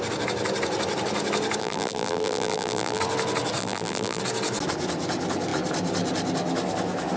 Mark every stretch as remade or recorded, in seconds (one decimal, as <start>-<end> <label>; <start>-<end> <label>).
0.0-1.6 recorded; 1.6-3.0 remade; 3.0-3.6 recorded; 3.6-4.2 remade; 4.2-7.2 recorded